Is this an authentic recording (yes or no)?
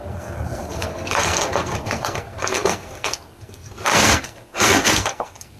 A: no